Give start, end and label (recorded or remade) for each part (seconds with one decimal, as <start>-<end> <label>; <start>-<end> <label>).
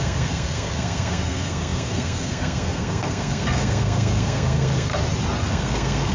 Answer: 0.0-4.9 remade; 4.9-5.5 recorded; 5.5-6.1 remade